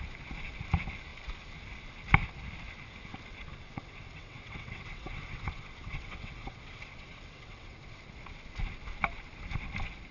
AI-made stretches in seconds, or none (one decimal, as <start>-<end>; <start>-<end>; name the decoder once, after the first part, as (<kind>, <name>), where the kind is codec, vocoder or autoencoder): 3.5-8.0 (vocoder, WaveNeXt)